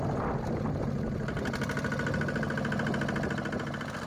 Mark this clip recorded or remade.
recorded